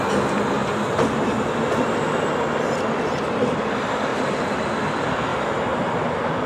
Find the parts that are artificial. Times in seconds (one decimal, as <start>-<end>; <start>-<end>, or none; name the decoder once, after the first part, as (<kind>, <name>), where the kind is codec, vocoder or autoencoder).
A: 4.1-4.7 (vocoder, BigVGAN v2); 5.3-6.5

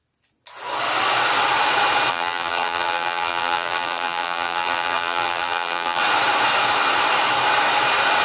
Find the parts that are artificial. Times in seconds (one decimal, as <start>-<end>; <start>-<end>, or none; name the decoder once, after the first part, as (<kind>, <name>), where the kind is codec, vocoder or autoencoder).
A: 2.1-6.0 (vocoder, BigVGAN v2)

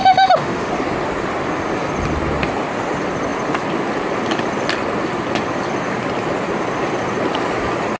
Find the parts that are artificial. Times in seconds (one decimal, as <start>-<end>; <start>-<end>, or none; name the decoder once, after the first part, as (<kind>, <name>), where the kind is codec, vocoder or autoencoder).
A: 0.0-0.7 (autoencoder, DAC-VAE)

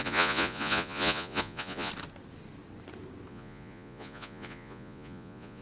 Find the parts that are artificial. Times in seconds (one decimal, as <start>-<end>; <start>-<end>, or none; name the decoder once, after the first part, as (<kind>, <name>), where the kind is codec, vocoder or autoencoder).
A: 0.0-1.9 (vocoder, Vocos); 3.3-5.6

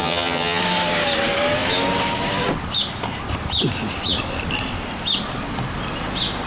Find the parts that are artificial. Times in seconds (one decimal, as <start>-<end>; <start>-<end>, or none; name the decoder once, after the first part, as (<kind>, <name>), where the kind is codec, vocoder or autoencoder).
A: 0.0-0.6 (vocoder, HiFi-GAN)

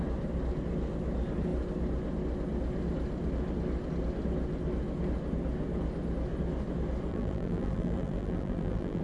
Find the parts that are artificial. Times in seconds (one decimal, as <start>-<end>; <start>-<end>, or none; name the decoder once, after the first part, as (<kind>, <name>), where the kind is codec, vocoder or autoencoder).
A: 7.1-9.0 (vocoder, BigVGAN v2)

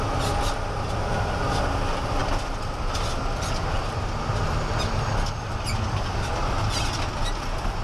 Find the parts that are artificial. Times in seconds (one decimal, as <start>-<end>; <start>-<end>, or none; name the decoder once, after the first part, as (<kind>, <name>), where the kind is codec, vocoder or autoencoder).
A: none